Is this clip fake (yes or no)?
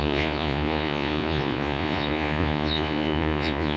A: yes